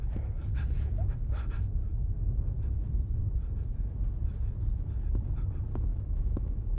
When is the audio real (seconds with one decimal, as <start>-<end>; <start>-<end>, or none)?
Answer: 0.0-5.9